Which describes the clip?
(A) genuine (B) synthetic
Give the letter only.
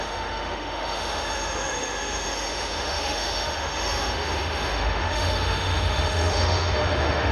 B